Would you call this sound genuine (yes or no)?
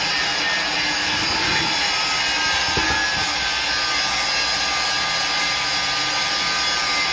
yes